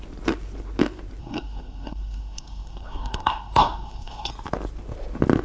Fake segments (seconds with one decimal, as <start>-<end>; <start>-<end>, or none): 1.2-4.3